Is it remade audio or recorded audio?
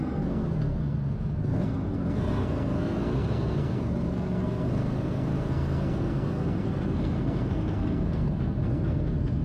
remade